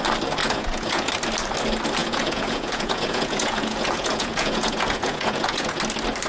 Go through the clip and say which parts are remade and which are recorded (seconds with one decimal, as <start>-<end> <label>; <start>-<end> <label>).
0.0-0.4 recorded; 0.4-1.1 remade; 1.1-2.0 recorded; 2.0-5.8 remade; 5.8-6.3 recorded